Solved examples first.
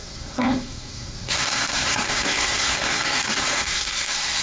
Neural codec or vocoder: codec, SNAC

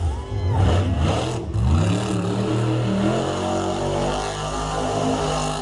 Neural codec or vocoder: none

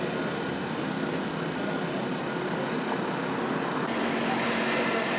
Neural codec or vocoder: none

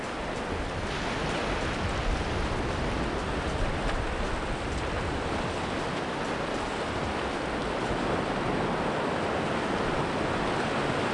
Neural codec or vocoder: none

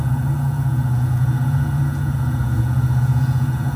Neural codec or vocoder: vocoder, Vocos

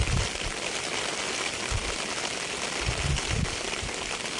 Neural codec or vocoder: vocoder, BigVGAN v2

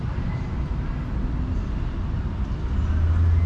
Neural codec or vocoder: none